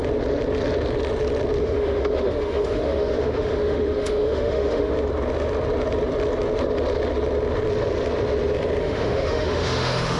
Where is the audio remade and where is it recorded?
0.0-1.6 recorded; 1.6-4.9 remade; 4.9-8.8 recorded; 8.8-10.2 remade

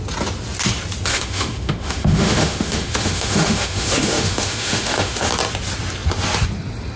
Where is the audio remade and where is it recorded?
0.0-1.1 recorded; 1.1-5.3 remade; 5.3-7.0 recorded